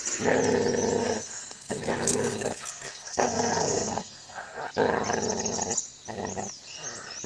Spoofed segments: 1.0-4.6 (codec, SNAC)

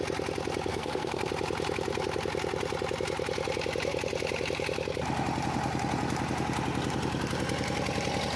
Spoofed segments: 0.7-1.3 (codec, SNAC)

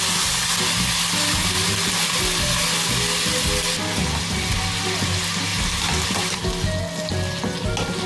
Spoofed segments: none

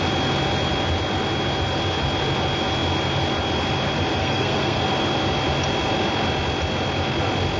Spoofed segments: 4.2-4.8 (codec, SNAC)

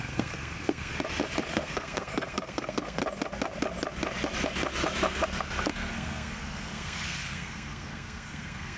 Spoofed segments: 0.0-0.9 (codec, SNAC); 1.5-3.0; 5.7-8.8

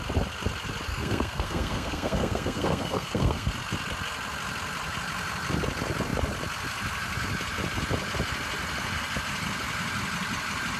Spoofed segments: 0.9-3.5 (codec, SNAC)

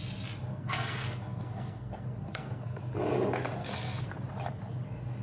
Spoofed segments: 0.5-2.8 (codec, SNAC); 3.6-4.1

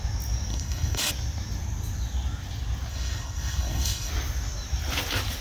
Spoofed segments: 0.5-1.1 (codec, SNAC); 2.9-4.1